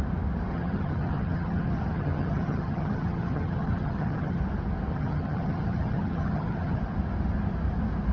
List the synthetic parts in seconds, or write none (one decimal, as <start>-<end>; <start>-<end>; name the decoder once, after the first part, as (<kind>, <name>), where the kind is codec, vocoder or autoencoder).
0.5-4.4 (vocoder, HiFi-GAN); 4.9-6.8